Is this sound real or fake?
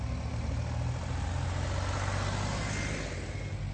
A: real